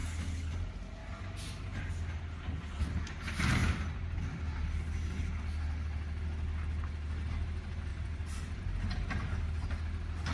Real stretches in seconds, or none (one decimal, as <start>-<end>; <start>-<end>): 0.0-1.0; 1.8-7.9; 8.6-10.3